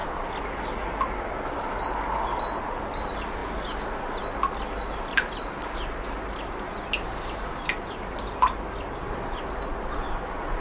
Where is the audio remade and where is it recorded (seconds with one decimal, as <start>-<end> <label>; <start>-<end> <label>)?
0.0-10.6 recorded